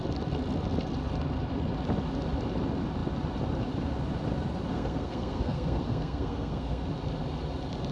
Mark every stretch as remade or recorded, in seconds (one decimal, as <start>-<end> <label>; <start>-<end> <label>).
0.0-4.7 recorded; 4.7-6.8 remade; 6.8-7.9 recorded